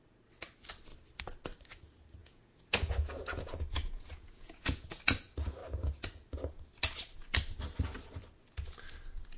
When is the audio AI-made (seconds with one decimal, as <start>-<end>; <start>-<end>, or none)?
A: 2.2-5.0